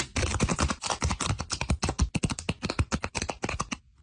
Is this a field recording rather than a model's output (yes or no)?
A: yes